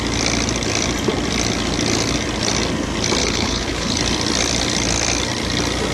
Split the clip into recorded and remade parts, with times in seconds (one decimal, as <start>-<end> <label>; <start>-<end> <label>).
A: 0.0-3.2 recorded; 3.2-4.0 remade; 4.0-5.9 recorded